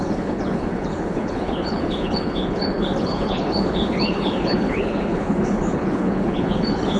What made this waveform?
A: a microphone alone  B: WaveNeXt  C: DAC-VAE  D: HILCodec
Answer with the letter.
D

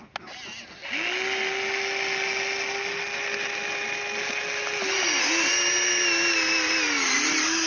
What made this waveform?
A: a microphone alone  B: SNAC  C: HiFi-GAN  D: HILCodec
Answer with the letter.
A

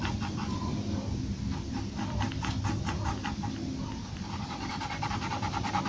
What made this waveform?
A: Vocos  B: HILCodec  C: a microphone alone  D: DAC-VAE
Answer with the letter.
C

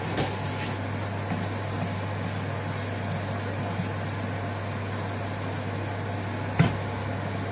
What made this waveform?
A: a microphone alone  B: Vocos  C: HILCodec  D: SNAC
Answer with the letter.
A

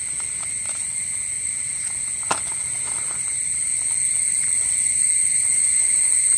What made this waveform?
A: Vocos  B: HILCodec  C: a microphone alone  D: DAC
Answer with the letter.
C